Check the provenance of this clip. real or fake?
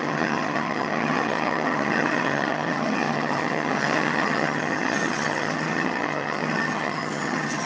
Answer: fake